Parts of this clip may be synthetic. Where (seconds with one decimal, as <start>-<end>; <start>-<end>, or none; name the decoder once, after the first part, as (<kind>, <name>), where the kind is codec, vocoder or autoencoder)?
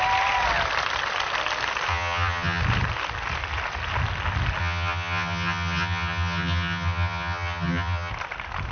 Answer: 1.9-2.6 (vocoder, HiFi-GAN); 4.6-8.1